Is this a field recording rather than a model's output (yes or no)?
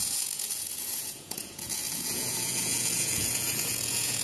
no